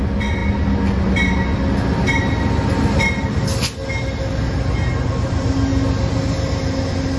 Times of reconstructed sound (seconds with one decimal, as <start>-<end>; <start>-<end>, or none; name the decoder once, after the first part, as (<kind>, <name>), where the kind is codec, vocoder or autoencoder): none